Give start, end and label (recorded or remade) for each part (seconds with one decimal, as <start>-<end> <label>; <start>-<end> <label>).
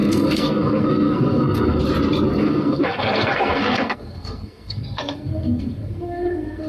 0.0-1.8 remade; 1.8-2.4 recorded; 2.4-6.7 remade